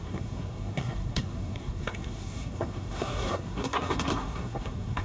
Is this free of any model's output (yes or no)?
no